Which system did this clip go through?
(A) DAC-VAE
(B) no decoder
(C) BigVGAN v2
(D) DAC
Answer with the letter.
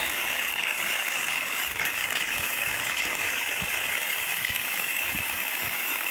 D